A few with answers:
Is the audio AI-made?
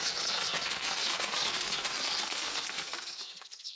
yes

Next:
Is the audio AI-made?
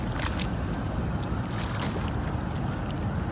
no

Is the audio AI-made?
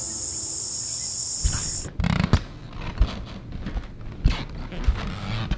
no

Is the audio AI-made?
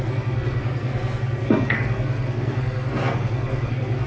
yes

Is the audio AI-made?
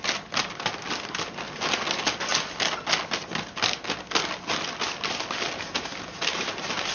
no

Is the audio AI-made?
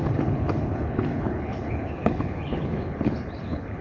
yes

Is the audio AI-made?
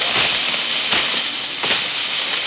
no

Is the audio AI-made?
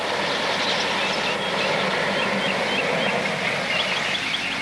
no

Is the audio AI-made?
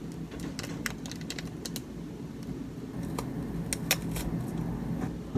no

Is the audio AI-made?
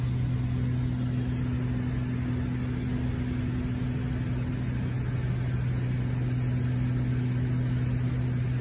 no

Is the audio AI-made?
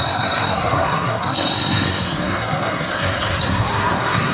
yes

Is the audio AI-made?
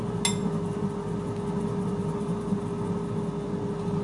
no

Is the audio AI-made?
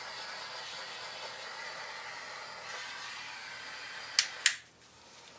no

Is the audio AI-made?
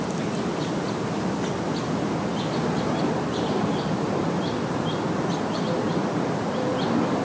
no